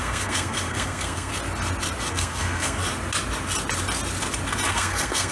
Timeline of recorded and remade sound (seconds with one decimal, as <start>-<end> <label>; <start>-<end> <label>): 0.0-1.3 remade; 1.3-2.1 recorded; 2.1-2.8 remade; 2.8-4.7 recorded; 4.7-5.3 remade